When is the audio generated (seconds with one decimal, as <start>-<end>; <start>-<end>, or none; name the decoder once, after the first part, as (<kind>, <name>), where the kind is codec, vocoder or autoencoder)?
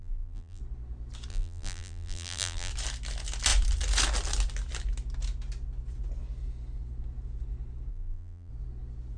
0.0-0.6 (vocoder, BigVGAN v2); 1.3-2.7; 7.9-8.5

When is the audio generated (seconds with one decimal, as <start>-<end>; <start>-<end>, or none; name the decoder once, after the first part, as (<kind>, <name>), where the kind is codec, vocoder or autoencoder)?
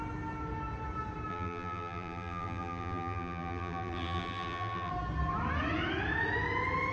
1.3-4.9 (vocoder, BigVGAN v2)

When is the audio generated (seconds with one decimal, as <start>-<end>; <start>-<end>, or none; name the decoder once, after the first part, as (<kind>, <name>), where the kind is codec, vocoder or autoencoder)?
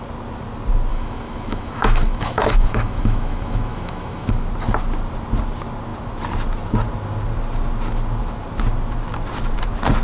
0.9-4.3 (autoencoder, DAC-VAE)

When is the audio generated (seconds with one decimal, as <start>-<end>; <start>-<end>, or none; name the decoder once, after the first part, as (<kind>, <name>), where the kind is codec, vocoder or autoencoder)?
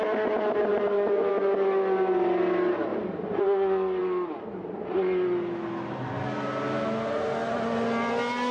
0.7-1.3 (vocoder, BigVGAN v2); 2.9-3.4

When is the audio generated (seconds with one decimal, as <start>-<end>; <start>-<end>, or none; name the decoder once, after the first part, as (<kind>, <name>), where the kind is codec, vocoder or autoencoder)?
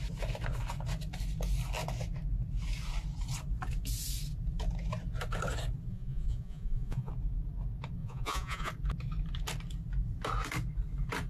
5.9-7.1 (vocoder, Vocos); 8.0-8.7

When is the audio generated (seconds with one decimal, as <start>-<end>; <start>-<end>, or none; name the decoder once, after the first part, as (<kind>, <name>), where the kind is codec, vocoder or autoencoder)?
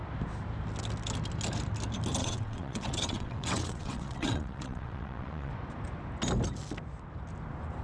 2.2-5.5 (vocoder, WaveNeXt)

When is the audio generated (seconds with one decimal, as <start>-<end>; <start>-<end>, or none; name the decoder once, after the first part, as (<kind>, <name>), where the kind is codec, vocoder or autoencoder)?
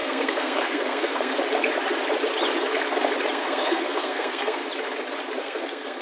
0.0-1.3 (codec, SNAC); 3.3-4.6; 5.4-6.0